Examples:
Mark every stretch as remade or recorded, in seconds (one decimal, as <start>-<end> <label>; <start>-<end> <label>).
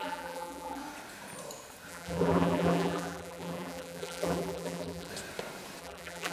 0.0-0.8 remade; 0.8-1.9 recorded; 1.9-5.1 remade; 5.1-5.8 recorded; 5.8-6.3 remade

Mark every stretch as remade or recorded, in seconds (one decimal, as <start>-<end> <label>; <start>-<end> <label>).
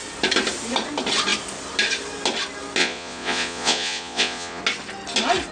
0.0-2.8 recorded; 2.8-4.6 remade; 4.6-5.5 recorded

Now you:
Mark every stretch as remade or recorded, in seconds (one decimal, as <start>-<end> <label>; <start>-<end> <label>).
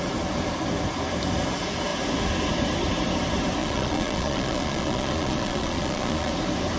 0.0-3.6 recorded; 3.6-6.3 remade; 6.3-6.8 recorded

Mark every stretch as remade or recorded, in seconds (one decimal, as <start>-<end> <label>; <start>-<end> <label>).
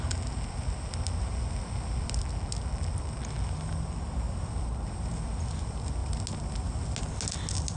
0.0-7.8 recorded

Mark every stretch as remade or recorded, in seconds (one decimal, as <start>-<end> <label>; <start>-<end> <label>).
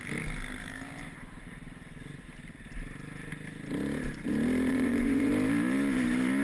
0.0-4.7 recorded; 4.7-5.3 remade; 5.3-6.4 recorded